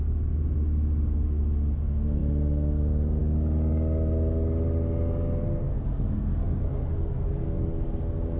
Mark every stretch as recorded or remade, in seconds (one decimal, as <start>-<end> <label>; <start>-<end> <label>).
0.0-5.7 recorded; 5.7-8.0 remade; 8.0-8.4 recorded